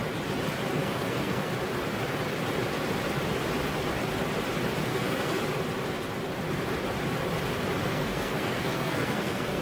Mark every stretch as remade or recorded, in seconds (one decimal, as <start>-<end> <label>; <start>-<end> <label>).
0.0-0.8 recorded; 0.8-1.5 remade; 1.5-4.9 recorded; 4.9-5.4 remade; 5.4-7.8 recorded; 7.8-9.6 remade

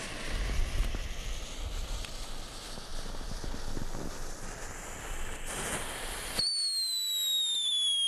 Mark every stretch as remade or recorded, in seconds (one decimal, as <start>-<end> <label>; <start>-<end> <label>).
0.0-8.1 recorded

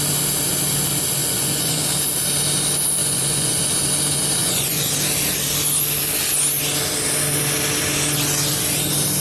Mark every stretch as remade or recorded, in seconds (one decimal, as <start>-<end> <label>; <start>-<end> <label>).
0.0-1.2 recorded; 1.2-1.8 remade; 1.8-3.0 recorded; 3.0-3.7 remade; 3.7-4.4 recorded; 4.4-4.9 remade; 4.9-9.2 recorded